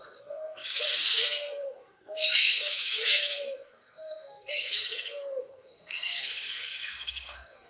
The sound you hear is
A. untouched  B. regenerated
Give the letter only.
B